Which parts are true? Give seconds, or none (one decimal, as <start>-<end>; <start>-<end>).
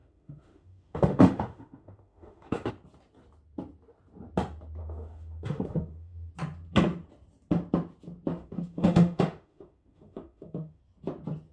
2.7-4.8; 6.3-8.3; 10.8-11.5